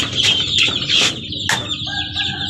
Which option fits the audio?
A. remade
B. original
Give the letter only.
B